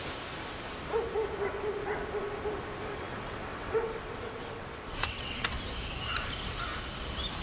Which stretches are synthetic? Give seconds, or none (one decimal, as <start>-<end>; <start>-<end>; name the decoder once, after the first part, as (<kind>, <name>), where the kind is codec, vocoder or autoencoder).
2.9-5.6 (vocoder, WaveNeXt)

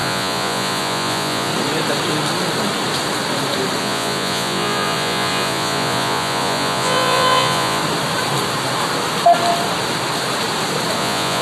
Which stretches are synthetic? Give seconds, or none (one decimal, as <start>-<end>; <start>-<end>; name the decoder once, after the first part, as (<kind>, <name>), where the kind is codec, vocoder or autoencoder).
0.0-1.5 (vocoder, Vocos); 3.8-7.8; 11.0-11.4

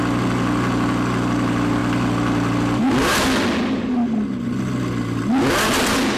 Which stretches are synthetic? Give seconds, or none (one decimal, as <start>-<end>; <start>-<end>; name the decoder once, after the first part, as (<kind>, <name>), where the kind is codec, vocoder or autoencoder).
none

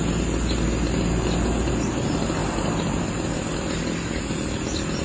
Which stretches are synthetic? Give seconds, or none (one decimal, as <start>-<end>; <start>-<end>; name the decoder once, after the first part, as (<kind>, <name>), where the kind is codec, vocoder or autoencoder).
none